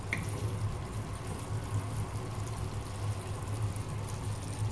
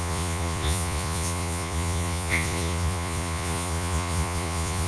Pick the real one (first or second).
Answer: first